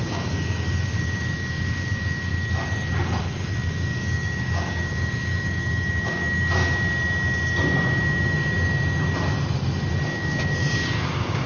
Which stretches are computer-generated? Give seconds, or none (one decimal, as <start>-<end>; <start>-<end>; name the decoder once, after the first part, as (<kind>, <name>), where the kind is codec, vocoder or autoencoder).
0.0-2.3 (codec, DAC); 3.2-6.2; 10.1-11.5